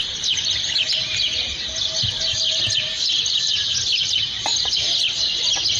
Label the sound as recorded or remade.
recorded